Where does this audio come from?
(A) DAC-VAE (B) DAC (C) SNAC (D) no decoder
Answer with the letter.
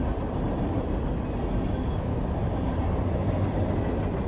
D